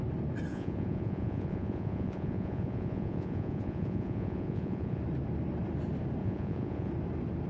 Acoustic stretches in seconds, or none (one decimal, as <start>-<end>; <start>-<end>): 0.0-0.5; 5.0-6.2; 6.9-7.5